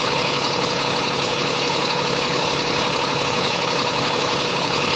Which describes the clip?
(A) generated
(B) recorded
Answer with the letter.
A